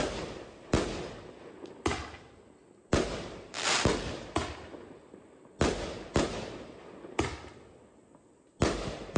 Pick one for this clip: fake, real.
real